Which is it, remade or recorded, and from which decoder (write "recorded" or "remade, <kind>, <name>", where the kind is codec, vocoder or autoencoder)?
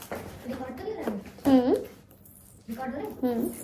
recorded